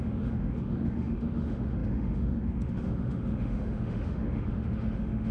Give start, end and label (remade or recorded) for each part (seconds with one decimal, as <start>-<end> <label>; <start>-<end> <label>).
0.0-5.3 remade